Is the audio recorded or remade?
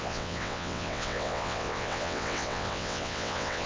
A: remade